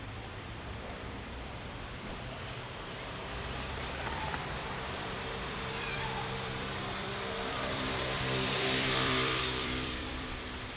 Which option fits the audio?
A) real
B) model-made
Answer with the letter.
B